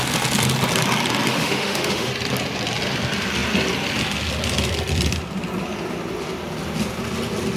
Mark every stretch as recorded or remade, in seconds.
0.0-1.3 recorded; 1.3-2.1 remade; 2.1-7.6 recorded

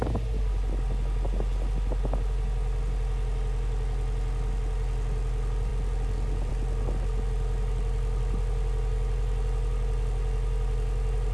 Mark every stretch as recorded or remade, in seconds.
0.0-11.3 recorded

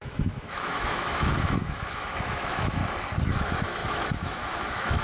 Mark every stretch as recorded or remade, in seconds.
0.0-2.8 remade; 2.8-3.3 recorded; 3.3-5.0 remade

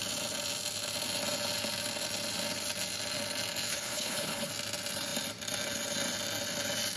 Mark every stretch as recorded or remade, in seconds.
0.0-3.7 recorded; 3.7-4.5 remade; 4.5-7.0 recorded

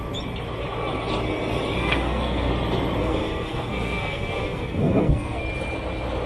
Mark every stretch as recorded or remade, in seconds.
0.0-1.8 recorded; 1.8-2.5 remade; 2.5-3.0 recorded; 3.0-5.4 remade; 5.4-6.3 recorded

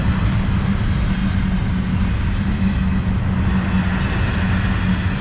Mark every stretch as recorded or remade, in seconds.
0.0-5.2 recorded